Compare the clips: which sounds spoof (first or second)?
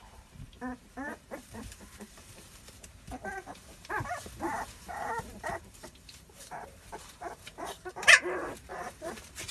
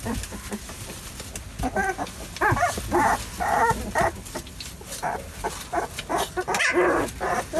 first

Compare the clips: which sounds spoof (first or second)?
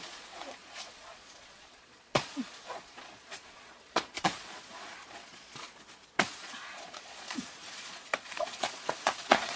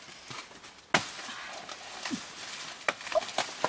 first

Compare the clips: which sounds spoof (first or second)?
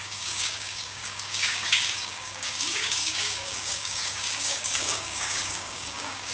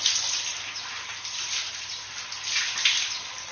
first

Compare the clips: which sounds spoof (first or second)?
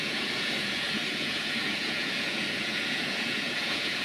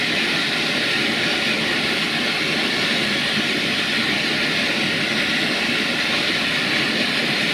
first